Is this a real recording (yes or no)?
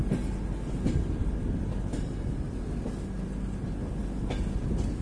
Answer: yes